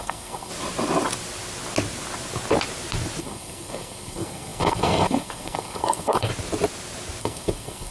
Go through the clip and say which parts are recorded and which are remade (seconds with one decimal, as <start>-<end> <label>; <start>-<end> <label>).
0.0-0.5 remade; 0.5-3.2 recorded; 3.2-6.3 remade; 6.3-7.2 recorded; 7.2-7.9 remade